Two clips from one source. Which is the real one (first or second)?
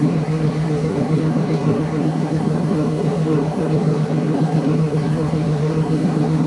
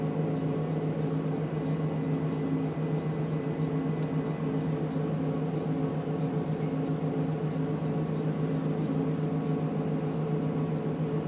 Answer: second